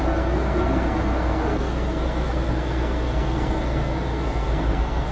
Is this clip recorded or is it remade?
remade